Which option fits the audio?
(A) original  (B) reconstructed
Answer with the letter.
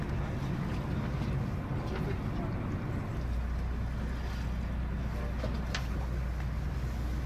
A